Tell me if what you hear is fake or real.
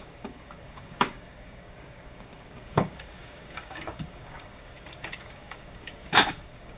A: fake